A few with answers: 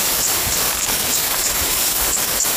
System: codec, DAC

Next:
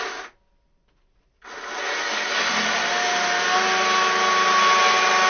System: none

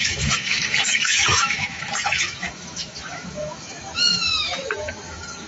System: autoencoder, DAC-VAE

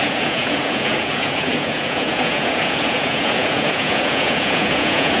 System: vocoder, Vocos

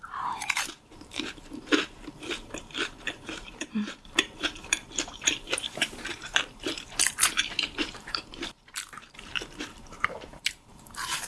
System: vocoder, BigVGAN v2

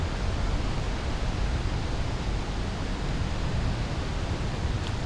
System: none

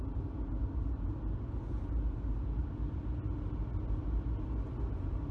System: none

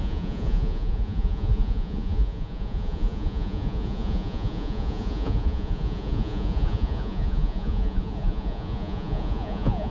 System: vocoder, Vocos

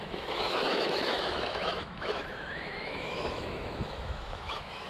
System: autoencoder, DAC-VAE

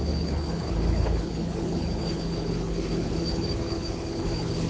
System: codec, HILCodec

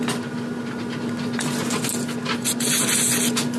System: none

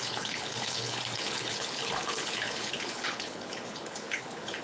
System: codec, HILCodec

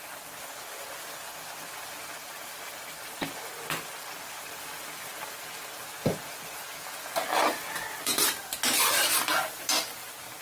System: none